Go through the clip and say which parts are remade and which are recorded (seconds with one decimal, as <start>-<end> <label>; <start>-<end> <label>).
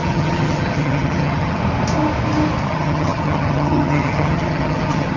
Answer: 0.0-1.6 remade; 1.6-2.6 recorded; 2.6-5.2 remade